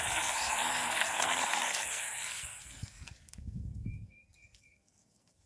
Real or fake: fake